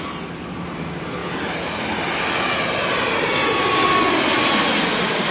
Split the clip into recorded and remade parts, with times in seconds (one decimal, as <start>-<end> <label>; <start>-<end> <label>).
0.0-5.3 recorded